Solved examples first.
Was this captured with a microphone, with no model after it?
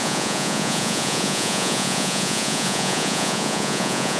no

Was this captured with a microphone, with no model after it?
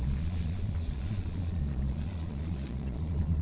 no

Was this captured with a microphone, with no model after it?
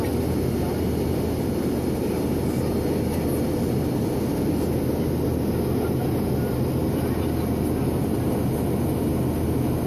yes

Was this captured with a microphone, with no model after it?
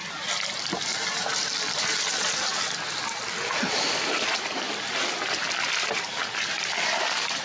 yes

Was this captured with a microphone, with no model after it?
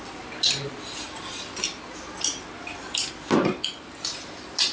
yes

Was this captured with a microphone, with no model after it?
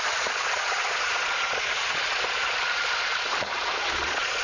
no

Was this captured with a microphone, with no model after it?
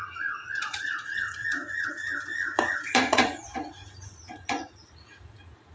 no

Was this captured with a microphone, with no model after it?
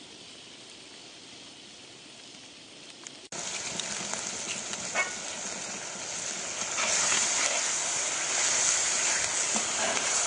yes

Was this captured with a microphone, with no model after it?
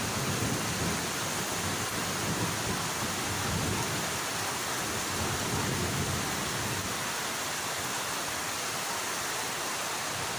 yes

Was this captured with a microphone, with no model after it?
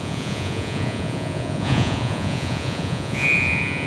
no